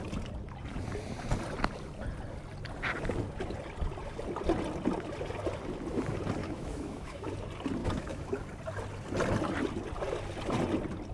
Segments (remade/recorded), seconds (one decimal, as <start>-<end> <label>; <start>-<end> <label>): 0.0-6.4 recorded; 6.4-7.3 remade; 7.3-7.8 recorded; 7.8-8.4 remade; 8.4-11.1 recorded